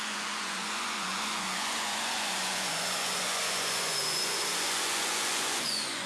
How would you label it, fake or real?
fake